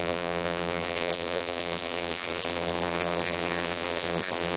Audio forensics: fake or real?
fake